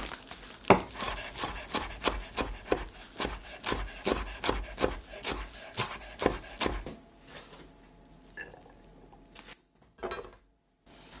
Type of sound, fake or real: real